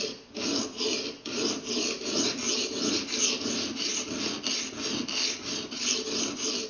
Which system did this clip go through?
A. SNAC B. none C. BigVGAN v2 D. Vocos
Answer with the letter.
B